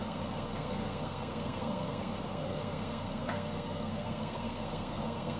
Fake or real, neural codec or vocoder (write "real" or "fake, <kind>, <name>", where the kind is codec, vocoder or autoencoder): fake, codec, SNAC